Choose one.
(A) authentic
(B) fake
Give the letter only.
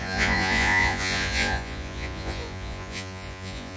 B